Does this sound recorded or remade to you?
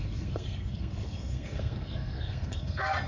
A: remade